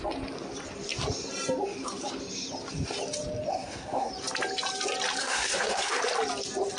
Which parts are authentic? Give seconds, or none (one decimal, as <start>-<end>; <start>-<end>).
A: 0.0-3.5; 4.1-5.2; 6.0-6.8